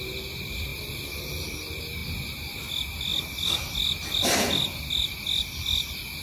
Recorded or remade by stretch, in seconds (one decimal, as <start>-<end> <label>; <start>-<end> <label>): 0.0-0.7 recorded; 0.7-1.3 remade; 1.3-3.1 recorded; 3.1-6.2 remade